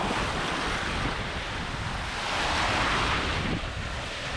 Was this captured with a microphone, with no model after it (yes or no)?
yes